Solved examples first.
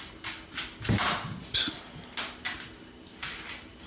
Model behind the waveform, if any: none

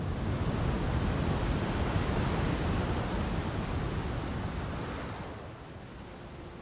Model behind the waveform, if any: none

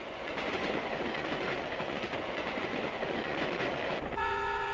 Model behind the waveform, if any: vocoder, Vocos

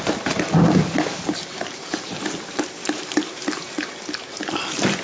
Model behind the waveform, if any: none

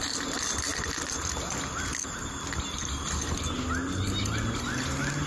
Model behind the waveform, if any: none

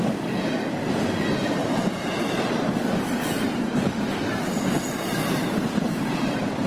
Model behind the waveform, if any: vocoder, BigVGAN v2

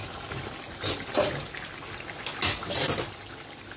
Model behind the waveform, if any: none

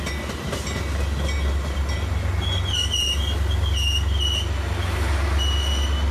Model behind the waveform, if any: none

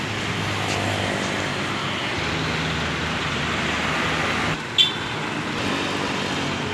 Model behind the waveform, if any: none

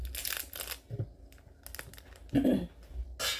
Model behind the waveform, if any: none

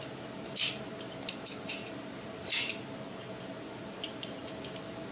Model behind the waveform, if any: none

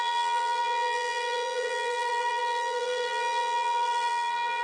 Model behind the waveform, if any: vocoder, BigVGAN v2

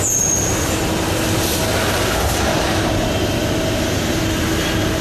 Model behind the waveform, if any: none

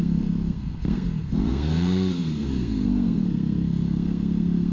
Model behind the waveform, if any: codec, SNAC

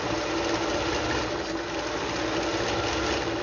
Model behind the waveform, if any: none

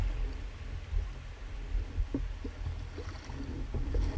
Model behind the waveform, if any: none